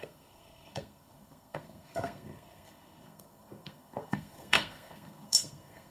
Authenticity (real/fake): fake